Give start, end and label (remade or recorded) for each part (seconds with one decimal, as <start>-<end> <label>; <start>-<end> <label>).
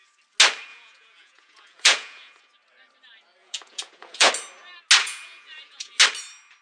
0.0-0.7 recorded; 0.7-2.4 remade; 2.4-3.4 recorded; 3.4-4.3 remade; 4.3-5.0 recorded; 5.0-6.0 remade; 6.0-6.6 recorded